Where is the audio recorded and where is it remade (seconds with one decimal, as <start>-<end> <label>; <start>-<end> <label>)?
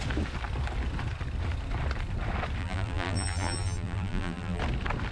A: 0.0-2.6 recorded; 2.6-4.6 remade; 4.6-5.1 recorded